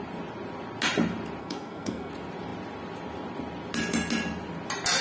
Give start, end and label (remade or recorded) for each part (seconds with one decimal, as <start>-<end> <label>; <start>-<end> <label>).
0.0-1.4 recorded; 1.4-2.1 remade; 2.1-5.0 recorded